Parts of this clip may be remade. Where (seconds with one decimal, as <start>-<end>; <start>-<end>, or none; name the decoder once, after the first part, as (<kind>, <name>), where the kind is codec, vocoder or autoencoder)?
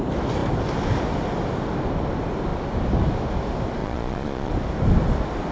3.8-4.5 (vocoder, Vocos)